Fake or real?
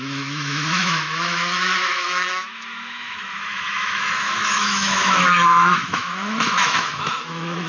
fake